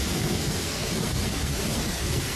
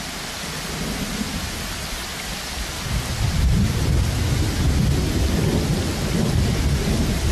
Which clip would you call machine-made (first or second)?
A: first